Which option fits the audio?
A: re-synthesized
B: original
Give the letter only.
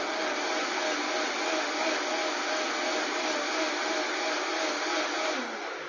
B